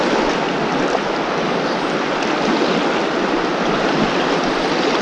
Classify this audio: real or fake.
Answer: real